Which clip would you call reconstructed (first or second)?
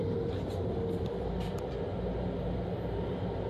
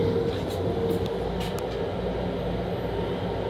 first